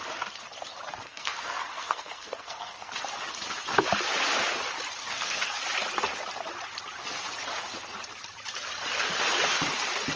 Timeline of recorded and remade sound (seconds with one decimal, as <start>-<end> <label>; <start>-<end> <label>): 0.0-1.0 recorded; 1.0-2.9 remade; 2.9-5.0 recorded; 5.0-5.6 remade; 5.6-10.2 recorded